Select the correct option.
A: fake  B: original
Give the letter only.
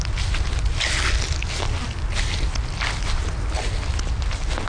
B